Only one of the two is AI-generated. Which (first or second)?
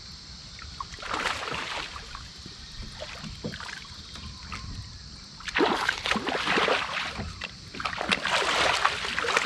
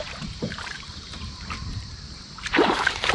second